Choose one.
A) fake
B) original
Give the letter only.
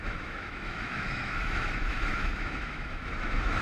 A